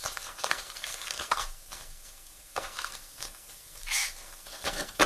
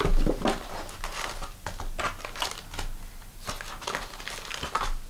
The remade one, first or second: first